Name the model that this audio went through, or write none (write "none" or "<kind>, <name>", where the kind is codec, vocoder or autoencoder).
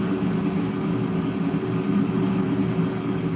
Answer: none